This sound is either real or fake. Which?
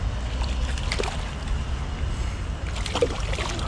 real